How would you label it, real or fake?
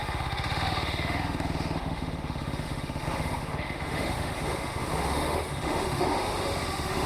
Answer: fake